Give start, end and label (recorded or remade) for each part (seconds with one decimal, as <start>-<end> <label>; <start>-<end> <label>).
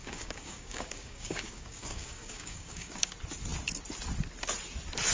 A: 0.0-3.1 remade; 3.1-5.1 recorded